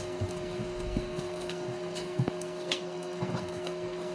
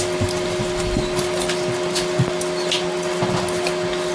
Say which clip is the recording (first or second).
second